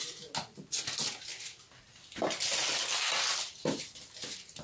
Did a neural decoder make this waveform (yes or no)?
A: no